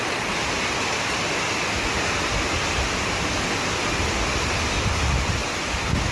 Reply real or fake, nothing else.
real